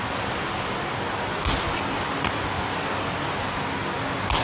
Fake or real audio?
real